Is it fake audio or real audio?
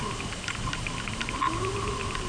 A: real